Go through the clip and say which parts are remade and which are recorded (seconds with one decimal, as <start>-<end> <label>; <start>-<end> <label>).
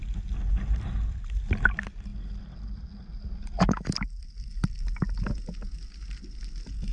0.0-6.9 recorded